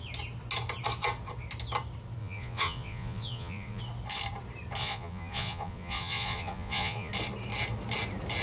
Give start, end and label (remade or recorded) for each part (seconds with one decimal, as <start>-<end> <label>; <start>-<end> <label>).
0.0-2.2 recorded; 2.2-3.8 remade; 3.8-4.8 recorded; 4.8-7.1 remade; 7.1-8.4 recorded